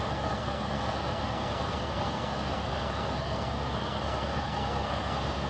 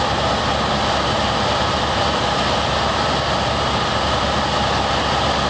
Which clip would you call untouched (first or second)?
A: second